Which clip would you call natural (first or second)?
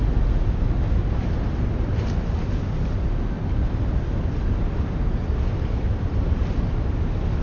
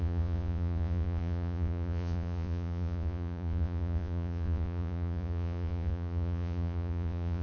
first